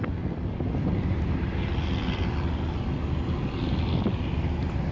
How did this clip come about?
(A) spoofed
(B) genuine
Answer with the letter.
A